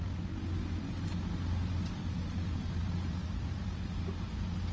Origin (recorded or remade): recorded